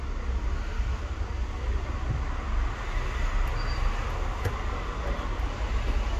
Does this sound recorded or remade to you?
recorded